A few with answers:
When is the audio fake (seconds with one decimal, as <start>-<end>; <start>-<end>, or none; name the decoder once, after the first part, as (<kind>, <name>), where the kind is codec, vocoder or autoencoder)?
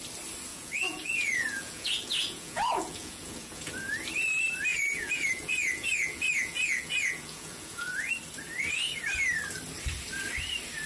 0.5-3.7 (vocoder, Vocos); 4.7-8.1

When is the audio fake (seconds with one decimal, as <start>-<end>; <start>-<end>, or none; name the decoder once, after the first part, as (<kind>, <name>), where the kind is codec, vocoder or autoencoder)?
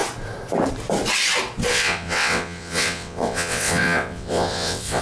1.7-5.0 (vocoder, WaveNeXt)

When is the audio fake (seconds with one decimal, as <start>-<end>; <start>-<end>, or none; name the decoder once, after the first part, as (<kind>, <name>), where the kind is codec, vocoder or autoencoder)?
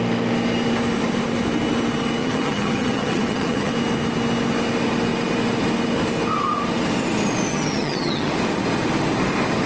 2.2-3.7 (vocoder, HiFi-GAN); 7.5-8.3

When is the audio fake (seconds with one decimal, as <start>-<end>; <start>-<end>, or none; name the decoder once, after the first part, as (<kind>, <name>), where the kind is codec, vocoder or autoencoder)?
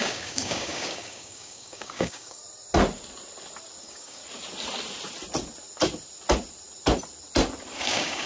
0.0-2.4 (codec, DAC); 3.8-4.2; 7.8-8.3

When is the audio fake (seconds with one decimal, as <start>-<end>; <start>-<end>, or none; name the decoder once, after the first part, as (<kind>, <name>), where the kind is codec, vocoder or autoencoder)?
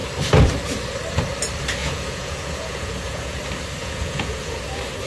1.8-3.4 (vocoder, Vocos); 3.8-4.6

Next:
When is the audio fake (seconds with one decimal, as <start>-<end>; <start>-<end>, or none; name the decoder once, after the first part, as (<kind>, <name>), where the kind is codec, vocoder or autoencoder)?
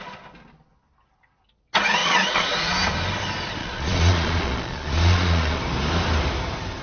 2.0-2.7 (vocoder, Vocos); 3.6-5.6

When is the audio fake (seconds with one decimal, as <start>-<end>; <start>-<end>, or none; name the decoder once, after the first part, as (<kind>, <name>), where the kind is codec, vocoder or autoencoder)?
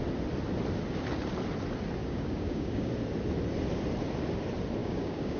2.0-2.9 (codec, DAC); 4.8-5.4